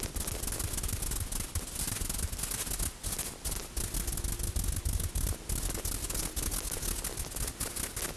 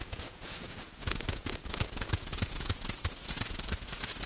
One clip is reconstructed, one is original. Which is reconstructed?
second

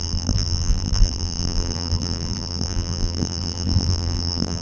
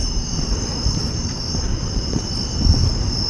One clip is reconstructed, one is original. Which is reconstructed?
first